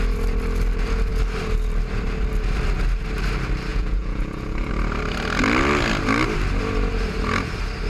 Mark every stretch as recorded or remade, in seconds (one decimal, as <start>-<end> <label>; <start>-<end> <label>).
0.0-3.7 recorded; 3.7-4.7 remade; 4.7-7.9 recorded